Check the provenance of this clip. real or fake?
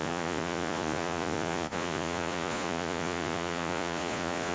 fake